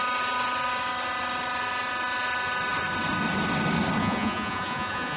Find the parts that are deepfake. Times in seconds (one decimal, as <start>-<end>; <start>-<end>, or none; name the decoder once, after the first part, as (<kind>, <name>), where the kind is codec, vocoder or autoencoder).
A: 4.0-5.2 (vocoder, Vocos)